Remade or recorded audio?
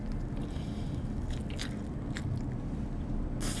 recorded